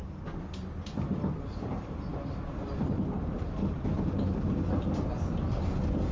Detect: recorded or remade recorded